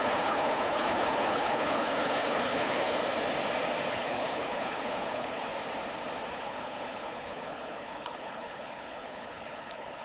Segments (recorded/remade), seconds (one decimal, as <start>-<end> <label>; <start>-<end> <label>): 0.0-3.0 remade; 3.0-3.9 recorded; 3.9-5.5 remade; 5.5-6.3 recorded; 6.3-10.0 remade